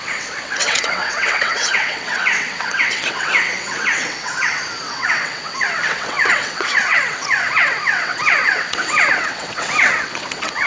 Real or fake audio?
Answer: fake